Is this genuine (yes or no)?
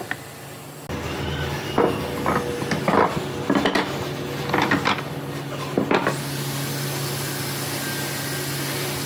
yes